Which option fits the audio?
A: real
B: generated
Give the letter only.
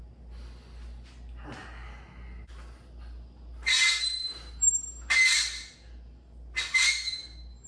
A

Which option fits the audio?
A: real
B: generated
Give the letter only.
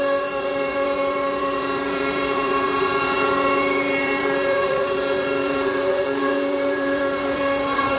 B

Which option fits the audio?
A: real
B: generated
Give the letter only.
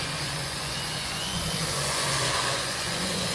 B